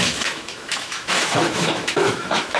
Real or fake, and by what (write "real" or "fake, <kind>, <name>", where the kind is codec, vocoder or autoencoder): fake, autoencoder, DAC-VAE